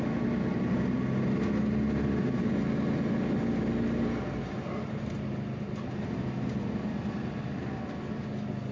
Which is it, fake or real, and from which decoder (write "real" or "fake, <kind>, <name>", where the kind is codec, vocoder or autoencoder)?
real